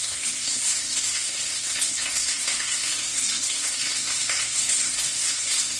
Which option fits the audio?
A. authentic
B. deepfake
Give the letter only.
B